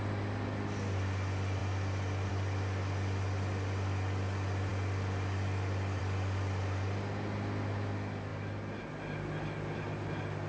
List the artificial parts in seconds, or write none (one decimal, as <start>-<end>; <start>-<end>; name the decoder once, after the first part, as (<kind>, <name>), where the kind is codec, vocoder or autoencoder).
none